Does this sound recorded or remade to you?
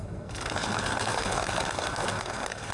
remade